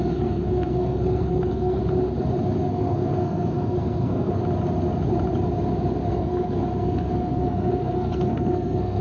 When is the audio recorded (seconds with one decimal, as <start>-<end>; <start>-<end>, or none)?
1.8-2.7; 4.4-6.1